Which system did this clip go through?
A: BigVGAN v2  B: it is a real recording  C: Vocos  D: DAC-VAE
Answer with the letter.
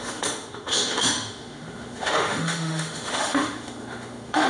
D